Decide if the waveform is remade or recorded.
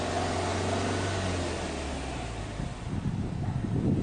recorded